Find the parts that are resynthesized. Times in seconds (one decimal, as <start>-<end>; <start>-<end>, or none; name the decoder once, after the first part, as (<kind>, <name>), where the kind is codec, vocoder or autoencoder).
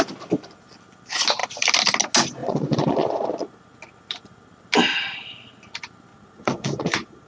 2.4-3.6 (vocoder, Vocos); 6.1-7.3